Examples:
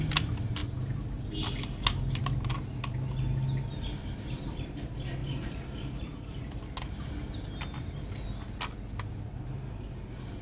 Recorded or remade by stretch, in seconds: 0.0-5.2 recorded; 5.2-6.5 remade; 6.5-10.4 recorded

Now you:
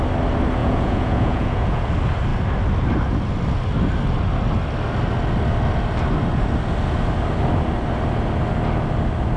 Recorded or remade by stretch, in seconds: 0.0-0.6 recorded; 0.6-1.9 remade; 1.9-9.4 recorded